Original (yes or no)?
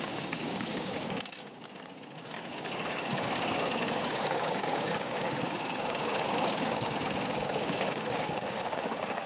no